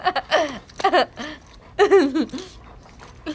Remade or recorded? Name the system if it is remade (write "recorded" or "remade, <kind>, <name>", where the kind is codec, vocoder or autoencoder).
recorded